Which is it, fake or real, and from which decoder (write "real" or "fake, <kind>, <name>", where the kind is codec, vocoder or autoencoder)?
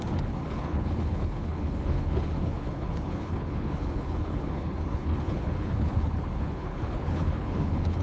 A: fake, codec, HILCodec